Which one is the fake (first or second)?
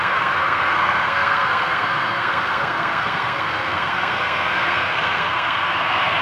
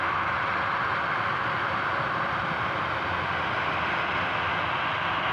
first